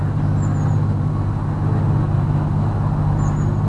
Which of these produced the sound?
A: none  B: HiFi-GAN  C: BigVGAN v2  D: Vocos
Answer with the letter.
A